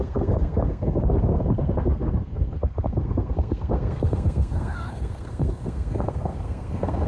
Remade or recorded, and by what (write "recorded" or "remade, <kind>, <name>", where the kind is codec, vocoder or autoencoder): remade, codec, SNAC